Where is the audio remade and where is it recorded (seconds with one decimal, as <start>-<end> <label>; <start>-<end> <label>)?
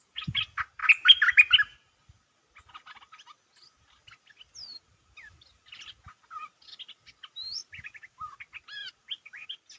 0.0-9.8 recorded